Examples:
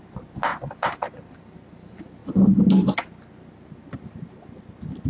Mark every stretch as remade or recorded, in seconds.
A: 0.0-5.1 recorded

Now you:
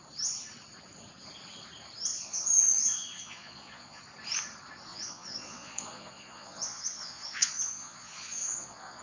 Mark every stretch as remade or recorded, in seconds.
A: 0.0-2.1 recorded; 2.1-4.0 remade; 4.0-4.9 recorded; 4.9-9.0 remade

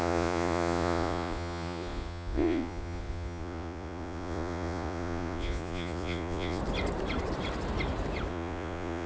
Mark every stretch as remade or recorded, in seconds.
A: 0.0-6.6 remade; 6.6-8.3 recorded; 8.3-9.1 remade

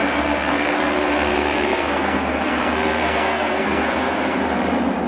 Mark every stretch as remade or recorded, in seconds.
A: 0.0-0.9 remade; 0.9-1.3 recorded; 1.3-4.4 remade; 4.4-5.1 recorded